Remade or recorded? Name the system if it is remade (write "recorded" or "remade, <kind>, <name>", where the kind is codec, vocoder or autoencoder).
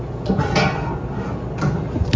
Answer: recorded